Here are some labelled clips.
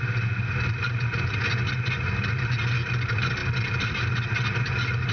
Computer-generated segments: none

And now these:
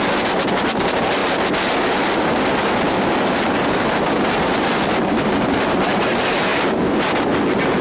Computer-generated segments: 1.2-5.9 (vocoder, BigVGAN v2); 6.5-7.8

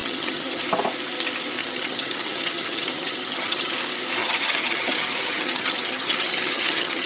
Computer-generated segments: 0.0-0.6 (vocoder, HiFi-GAN); 1.6-3.7; 4.2-7.1

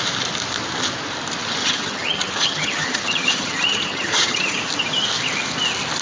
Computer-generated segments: 1.6-4.6 (vocoder, HiFi-GAN)